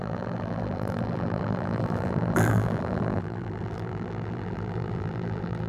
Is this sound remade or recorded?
remade